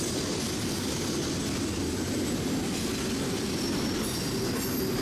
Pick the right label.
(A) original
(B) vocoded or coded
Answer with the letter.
A